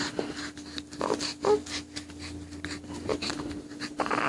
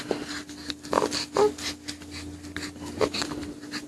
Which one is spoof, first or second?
first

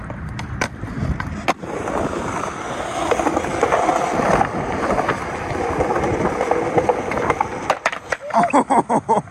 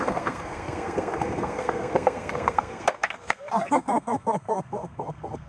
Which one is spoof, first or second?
second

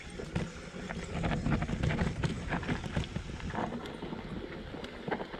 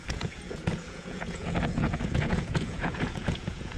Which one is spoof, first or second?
second